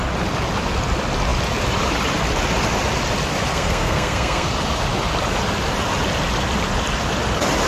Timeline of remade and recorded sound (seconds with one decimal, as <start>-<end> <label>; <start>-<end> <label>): 0.0-3.5 recorded; 3.5-4.5 remade; 4.5-7.7 recorded